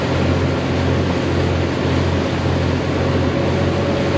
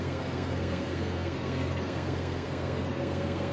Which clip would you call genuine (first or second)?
first